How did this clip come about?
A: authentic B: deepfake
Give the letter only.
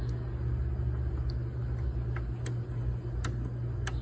A